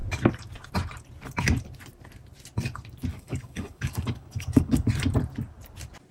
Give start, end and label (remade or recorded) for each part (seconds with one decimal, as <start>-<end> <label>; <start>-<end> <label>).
0.0-3.1 recorded; 3.1-4.9 remade; 4.9-6.1 recorded